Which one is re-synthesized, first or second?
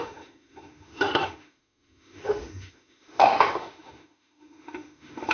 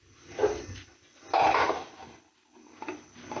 first